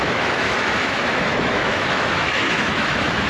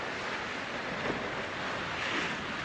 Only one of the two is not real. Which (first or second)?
first